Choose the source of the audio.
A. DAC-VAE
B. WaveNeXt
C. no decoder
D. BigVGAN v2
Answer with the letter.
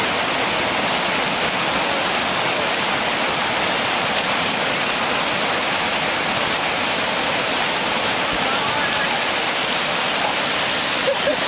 C